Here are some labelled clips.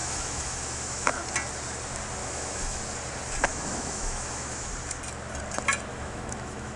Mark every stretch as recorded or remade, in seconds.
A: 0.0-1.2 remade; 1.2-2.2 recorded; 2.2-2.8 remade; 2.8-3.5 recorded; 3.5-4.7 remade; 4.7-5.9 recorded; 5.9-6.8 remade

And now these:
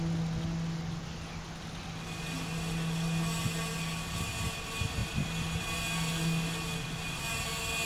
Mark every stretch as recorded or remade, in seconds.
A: 0.0-7.9 recorded

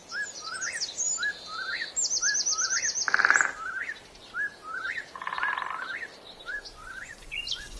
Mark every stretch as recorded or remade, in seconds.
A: 0.0-6.5 recorded; 6.5-7.8 remade